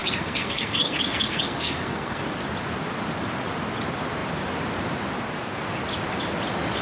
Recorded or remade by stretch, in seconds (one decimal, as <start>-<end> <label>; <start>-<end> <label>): 0.0-2.2 remade; 2.2-6.8 recorded